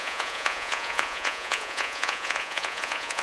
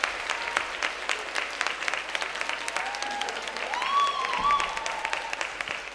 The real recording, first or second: second